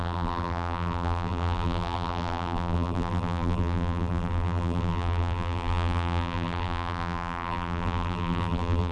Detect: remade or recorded remade